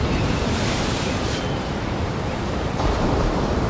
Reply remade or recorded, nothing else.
remade